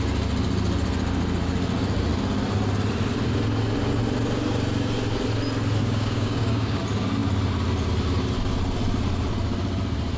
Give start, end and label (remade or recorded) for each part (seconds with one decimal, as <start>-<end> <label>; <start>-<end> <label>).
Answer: 0.0-5.8 recorded; 5.8-6.8 remade; 6.8-10.2 recorded